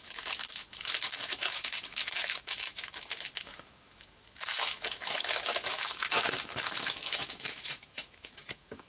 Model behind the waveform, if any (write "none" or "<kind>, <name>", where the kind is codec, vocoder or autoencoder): autoencoder, DAC-VAE